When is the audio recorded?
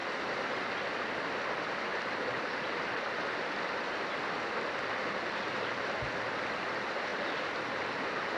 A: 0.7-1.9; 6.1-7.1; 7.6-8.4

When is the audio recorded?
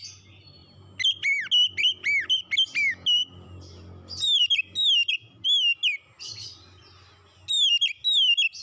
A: 0.0-8.6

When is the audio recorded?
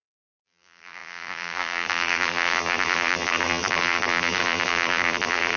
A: none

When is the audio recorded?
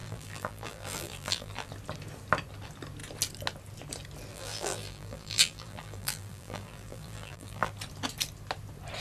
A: 1.7-4.3; 7.7-9.0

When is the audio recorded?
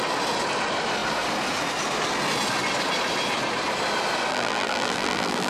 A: 0.0-4.3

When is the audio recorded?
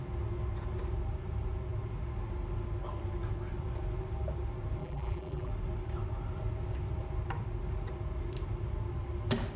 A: 0.0-4.8; 5.5-9.6